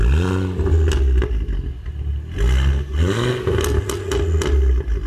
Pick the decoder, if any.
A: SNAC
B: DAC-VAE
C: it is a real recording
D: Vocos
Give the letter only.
C